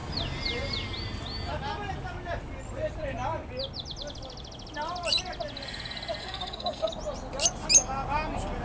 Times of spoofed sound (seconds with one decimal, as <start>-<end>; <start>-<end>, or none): 6.2-6.9